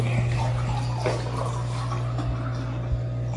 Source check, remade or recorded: recorded